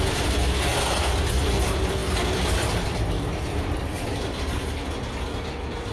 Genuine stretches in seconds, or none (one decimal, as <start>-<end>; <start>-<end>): 0.7-1.4